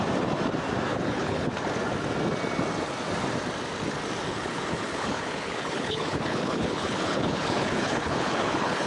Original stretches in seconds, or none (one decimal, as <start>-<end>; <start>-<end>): 0.0-0.9; 1.5-4.3